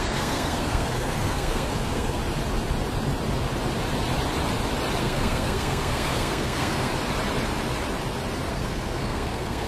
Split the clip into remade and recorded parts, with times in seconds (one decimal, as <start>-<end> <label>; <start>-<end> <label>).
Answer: 0.0-2.2 remade; 2.2-5.0 recorded; 5.0-6.9 remade; 6.9-8.5 recorded; 8.5-9.7 remade